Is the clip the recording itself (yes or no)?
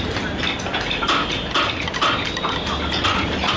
yes